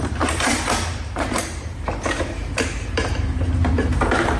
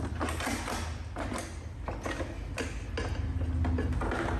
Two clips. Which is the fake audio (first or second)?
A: first